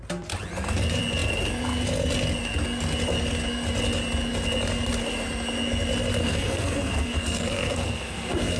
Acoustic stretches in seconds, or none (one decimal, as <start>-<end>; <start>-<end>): 0.0-6.2